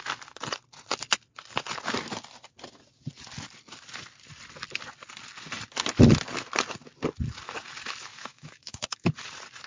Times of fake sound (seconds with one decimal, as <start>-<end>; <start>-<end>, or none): 8.1-9.1